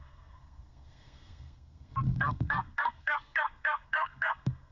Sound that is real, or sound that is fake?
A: fake